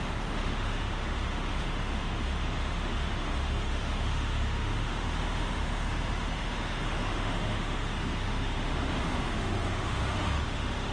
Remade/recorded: remade